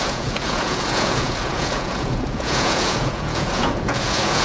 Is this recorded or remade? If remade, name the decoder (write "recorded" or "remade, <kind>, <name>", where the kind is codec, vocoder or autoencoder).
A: remade, vocoder, Vocos